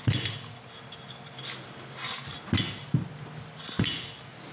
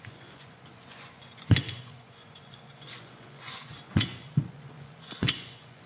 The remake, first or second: second